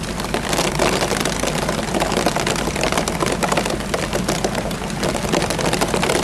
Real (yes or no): yes